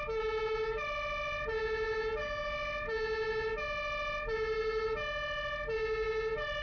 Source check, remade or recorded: recorded